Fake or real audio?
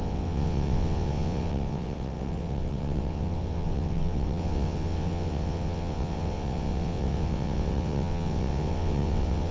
fake